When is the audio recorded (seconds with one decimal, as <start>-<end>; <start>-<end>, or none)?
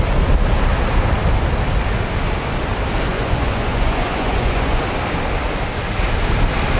0.0-3.1; 4.8-6.8